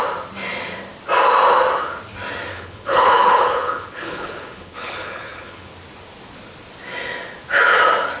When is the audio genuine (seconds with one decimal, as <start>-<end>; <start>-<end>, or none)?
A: 0.0-2.5; 5.7-8.2